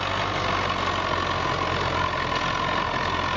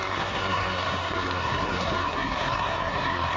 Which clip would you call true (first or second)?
first